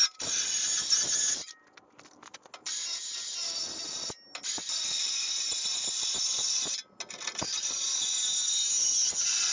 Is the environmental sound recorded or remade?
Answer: recorded